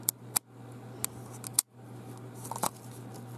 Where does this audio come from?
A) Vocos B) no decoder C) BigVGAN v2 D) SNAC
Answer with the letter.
B